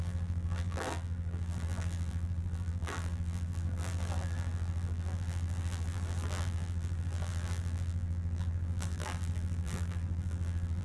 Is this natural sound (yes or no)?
no